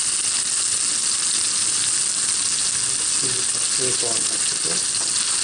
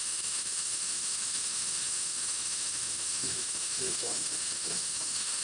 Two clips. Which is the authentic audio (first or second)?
first